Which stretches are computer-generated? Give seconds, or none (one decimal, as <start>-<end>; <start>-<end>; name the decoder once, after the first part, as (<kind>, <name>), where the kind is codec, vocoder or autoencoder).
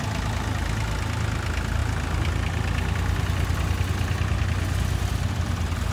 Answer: none